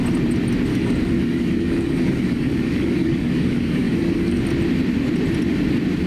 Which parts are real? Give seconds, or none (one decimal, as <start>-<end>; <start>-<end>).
0.0-0.7; 4.4-6.1